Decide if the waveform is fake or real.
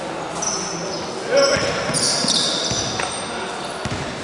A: real